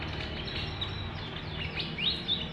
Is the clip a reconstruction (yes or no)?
no